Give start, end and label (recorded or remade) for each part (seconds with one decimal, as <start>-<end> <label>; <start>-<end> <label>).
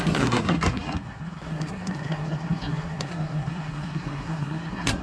0.0-5.0 remade